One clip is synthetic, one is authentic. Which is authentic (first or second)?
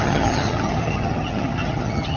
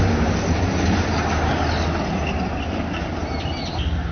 second